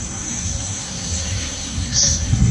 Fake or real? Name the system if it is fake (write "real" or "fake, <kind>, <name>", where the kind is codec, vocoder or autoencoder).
fake, codec, SNAC